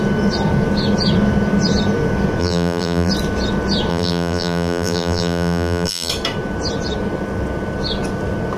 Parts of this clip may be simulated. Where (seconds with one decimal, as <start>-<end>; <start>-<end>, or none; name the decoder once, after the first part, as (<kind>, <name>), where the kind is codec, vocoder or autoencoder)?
2.4-3.1 (vocoder, BigVGAN v2); 3.9-6.1